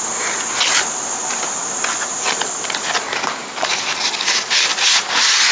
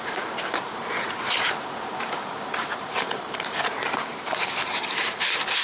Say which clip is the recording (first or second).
first